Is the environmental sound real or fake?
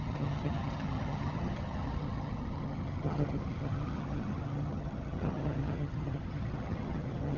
fake